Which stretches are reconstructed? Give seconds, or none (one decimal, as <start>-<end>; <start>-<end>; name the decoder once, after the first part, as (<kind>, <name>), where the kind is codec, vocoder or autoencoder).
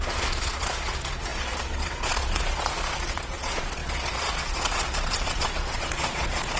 0.0-6.6 (vocoder, Vocos)